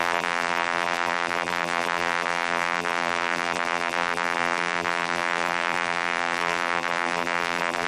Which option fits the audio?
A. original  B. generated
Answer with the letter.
B